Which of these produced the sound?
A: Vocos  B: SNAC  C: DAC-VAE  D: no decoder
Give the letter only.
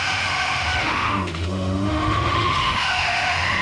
C